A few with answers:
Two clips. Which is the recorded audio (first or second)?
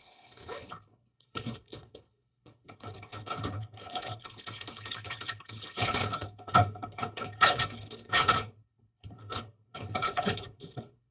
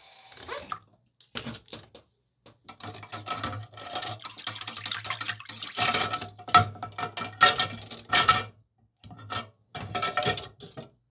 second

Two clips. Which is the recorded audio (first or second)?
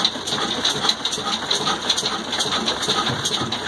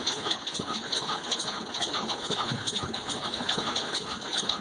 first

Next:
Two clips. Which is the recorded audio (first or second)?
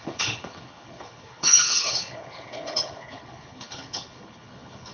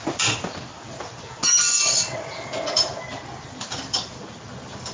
second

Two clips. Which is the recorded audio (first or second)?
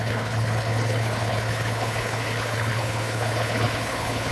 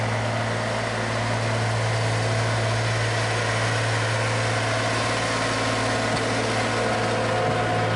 second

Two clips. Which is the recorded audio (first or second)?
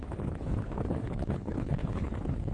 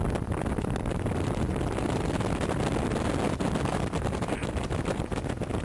second